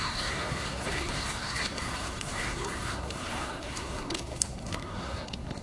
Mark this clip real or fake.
fake